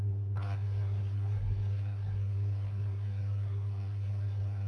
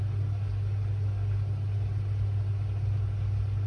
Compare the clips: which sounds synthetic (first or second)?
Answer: first